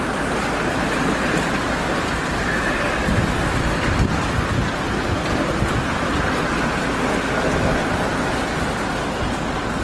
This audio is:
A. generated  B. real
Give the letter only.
B